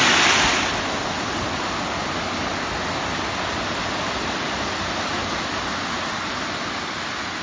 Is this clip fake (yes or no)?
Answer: no